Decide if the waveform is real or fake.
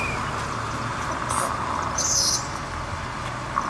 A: real